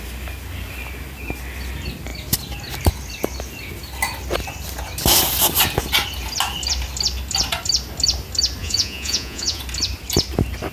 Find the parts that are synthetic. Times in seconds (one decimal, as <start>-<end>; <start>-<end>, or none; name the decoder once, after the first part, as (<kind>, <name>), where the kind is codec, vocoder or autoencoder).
8.6-9.6 (vocoder, Vocos)